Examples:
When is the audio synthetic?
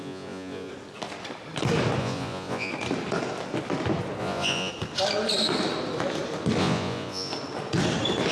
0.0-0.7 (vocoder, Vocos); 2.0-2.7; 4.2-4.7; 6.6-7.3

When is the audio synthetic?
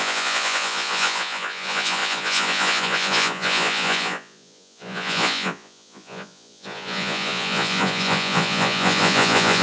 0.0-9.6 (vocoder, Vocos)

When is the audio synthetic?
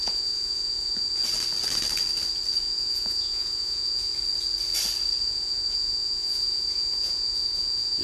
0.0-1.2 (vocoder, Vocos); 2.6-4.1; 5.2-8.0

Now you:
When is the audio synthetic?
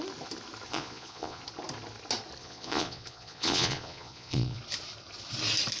0.7-1.4 (vocoder, Vocos); 2.4-4.6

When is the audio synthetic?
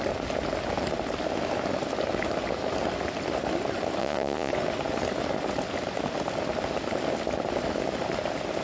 4.0-4.5 (vocoder, Vocos)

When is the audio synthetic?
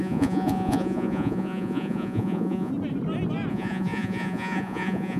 0.0-2.7 (vocoder, Vocos); 3.5-5.2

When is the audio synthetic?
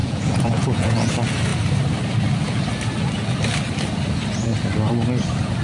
0.0-1.1 (vocoder, Vocos)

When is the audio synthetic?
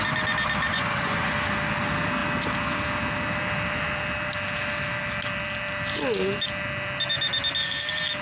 0.7-1.3 (vocoder, Vocos)